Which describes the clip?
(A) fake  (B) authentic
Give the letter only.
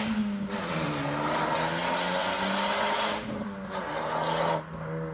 B